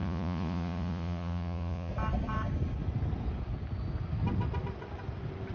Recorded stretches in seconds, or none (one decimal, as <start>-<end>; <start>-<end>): 1.9-5.5